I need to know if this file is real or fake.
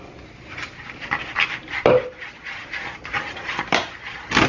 real